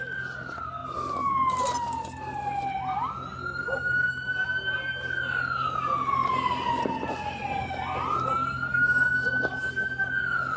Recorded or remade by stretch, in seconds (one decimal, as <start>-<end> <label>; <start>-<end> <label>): 0.0-10.6 recorded